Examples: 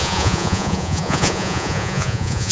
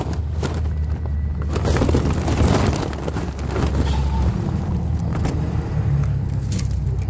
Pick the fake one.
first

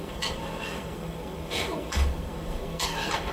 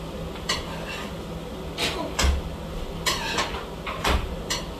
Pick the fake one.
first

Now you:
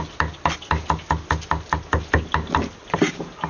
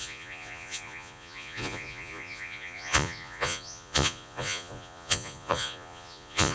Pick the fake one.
second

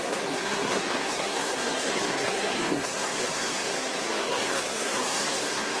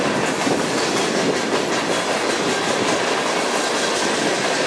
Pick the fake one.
first